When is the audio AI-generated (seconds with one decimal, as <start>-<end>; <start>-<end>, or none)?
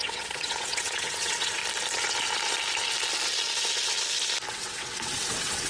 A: 0.0-1.6; 4.5-5.7